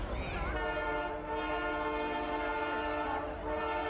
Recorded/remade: recorded